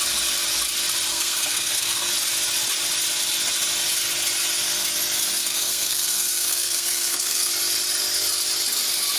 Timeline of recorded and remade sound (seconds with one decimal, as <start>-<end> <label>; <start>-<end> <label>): 0.0-1.1 recorded; 1.1-2.1 remade; 2.1-5.4 recorded; 5.4-7.5 remade; 7.5-9.2 recorded